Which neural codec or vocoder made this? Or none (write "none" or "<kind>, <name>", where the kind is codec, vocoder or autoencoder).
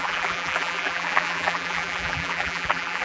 vocoder, BigVGAN v2